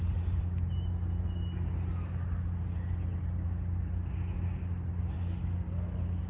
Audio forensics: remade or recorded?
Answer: recorded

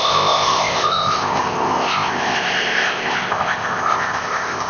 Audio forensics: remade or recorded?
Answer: remade